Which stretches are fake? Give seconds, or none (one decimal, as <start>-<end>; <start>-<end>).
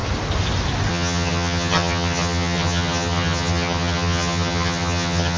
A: 0.9-5.4